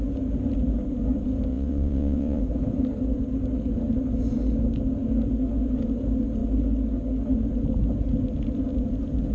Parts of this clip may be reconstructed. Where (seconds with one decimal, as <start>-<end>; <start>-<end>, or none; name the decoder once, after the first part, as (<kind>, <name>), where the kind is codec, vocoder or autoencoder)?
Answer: 1.5-2.4 (vocoder, WaveNeXt)